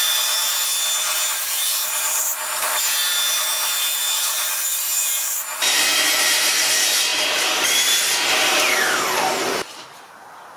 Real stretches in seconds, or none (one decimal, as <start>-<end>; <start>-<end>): 0.7-1.4